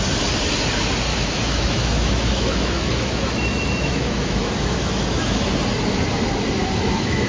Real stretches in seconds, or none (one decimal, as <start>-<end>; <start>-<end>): 0.0-1.1; 5.5-6.6